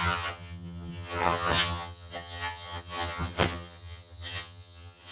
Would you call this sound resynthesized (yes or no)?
yes